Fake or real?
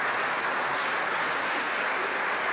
real